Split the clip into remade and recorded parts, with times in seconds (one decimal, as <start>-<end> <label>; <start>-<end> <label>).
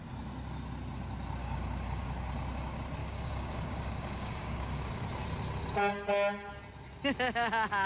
0.0-1.4 recorded; 1.4-2.1 remade; 2.1-3.0 recorded; 3.0-4.9 remade; 4.9-7.9 recorded